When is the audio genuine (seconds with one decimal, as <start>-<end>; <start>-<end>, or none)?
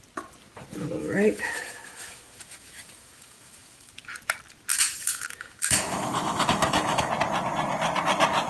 0.0-1.0; 3.9-4.7; 7.1-8.5